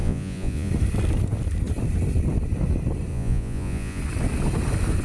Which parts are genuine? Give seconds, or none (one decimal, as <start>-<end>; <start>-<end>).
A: 0.7-3.1; 4.0-5.0